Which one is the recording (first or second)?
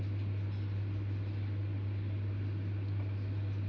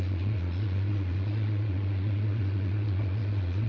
first